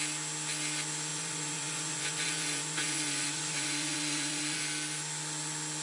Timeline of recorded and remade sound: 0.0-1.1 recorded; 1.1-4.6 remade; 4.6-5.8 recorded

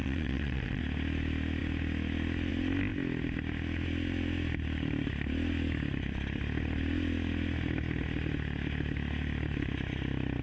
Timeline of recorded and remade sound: 0.0-0.8 remade; 0.8-10.4 recorded

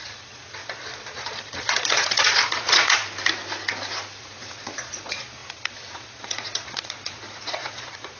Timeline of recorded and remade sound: 0.0-3.0 remade; 3.0-4.2 recorded; 4.2-8.2 remade

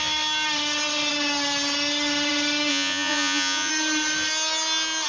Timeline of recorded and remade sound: 0.0-2.7 recorded; 2.7-3.7 remade; 3.7-5.1 recorded

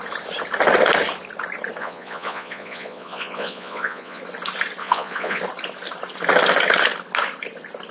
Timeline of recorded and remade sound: 0.0-1.8 recorded; 1.8-4.2 remade; 4.2-4.8 recorded; 4.8-5.4 remade; 5.4-7.9 recorded